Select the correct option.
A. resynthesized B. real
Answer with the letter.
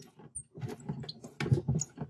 B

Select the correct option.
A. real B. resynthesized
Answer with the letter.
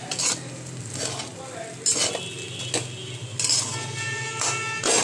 A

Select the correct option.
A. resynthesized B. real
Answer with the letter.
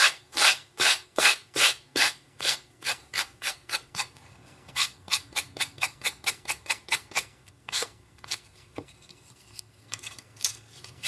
A